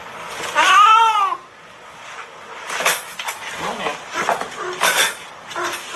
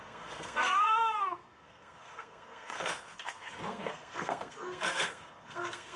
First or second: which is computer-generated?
second